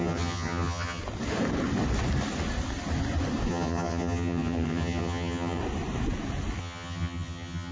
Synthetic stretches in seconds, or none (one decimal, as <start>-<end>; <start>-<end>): 0.0-1.0; 3.5-5.6; 6.6-7.7